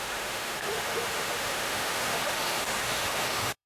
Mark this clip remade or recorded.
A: remade